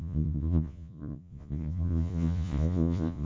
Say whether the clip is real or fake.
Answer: fake